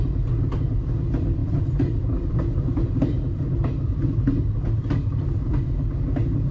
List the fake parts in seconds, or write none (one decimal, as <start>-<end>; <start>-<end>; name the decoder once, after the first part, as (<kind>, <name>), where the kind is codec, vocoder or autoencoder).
0.0-4.4 (vocoder, BigVGAN v2)